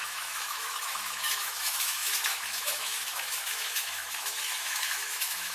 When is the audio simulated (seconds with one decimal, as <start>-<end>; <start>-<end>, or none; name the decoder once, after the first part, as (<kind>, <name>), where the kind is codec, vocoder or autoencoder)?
0.0-5.5 (autoencoder, DAC-VAE)